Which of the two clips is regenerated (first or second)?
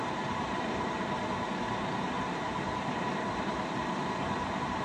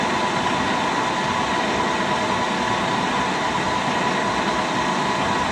first